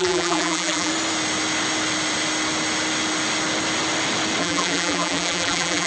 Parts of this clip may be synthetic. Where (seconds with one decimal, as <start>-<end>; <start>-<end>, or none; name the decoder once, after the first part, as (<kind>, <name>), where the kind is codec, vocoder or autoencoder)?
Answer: 0.0-0.9 (vocoder, BigVGAN v2); 4.4-5.9